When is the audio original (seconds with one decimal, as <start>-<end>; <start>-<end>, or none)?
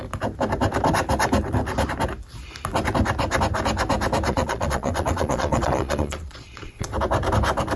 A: 0.0-4.3; 6.9-7.8